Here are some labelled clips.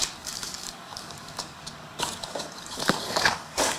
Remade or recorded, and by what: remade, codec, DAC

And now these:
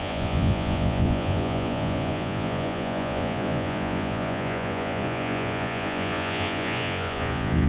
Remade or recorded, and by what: remade, vocoder, Vocos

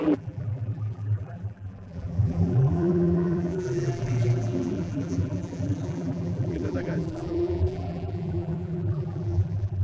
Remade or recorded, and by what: remade, vocoder, BigVGAN v2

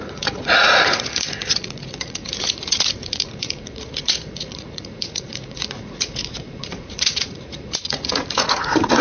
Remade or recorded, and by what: remade, vocoder, Vocos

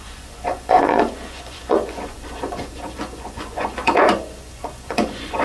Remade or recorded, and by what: remade, vocoder, Vocos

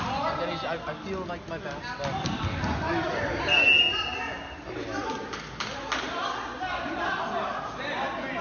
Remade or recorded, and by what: recorded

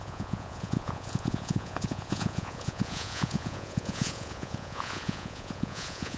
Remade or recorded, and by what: remade, vocoder, Vocos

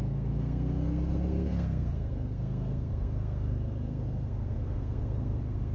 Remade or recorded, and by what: remade, codec, SNAC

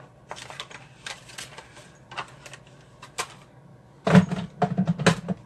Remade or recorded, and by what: recorded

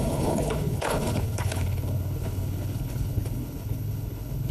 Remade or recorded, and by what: remade, codec, HILCodec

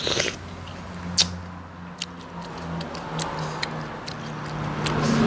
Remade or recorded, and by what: recorded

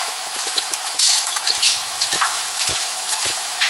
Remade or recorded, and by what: remade, autoencoder, DAC-VAE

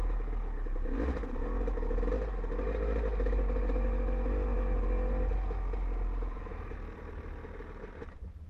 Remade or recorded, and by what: recorded